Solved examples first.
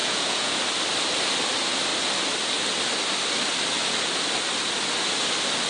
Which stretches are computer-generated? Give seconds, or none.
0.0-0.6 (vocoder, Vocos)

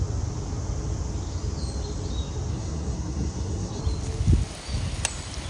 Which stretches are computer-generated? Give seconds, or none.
2.5-3.8 (codec, SNAC)

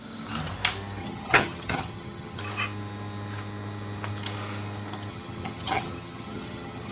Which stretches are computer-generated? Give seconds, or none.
1.0-2.4 (vocoder, HiFi-GAN); 5.1-6.9